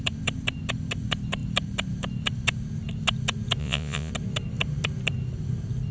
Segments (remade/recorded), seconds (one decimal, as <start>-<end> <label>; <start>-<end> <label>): 0.0-3.6 recorded; 3.6-4.1 remade; 4.1-5.9 recorded